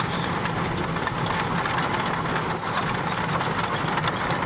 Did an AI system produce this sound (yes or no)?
no